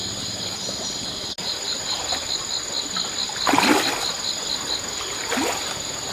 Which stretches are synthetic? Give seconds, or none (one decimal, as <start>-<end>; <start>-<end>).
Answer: 1.4-2.1

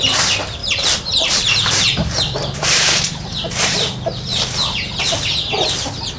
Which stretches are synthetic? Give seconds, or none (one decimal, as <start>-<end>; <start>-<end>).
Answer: 0.6-3.9